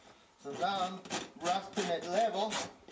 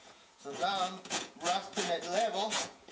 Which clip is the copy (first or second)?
second